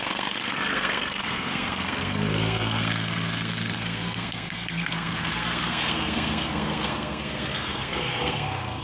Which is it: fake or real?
fake